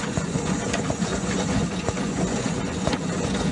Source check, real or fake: fake